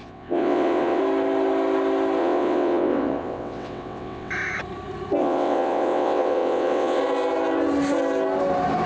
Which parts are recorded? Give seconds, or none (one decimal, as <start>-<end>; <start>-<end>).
1.0-2.2; 4.3-5.2; 7.0-8.9